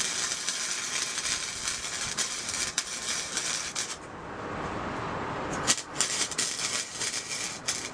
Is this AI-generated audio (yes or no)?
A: yes